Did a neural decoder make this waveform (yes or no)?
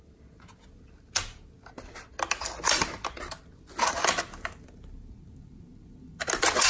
no